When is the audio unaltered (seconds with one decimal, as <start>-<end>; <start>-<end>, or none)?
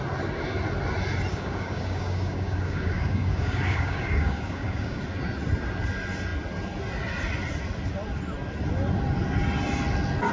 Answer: 0.0-1.3; 5.0-10.3